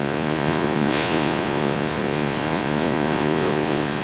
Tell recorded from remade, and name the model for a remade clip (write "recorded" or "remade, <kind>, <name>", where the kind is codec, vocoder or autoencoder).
remade, vocoder, Vocos